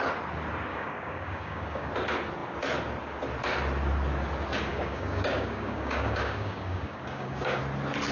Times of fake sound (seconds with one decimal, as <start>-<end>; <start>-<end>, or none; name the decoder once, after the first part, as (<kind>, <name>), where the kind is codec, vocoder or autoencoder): 0.7-1.9 (codec, DAC); 4.7-7.6